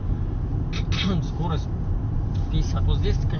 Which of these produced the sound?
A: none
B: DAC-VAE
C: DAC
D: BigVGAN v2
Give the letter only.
A